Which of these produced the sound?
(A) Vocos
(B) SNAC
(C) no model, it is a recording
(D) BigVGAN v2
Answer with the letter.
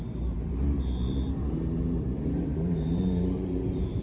D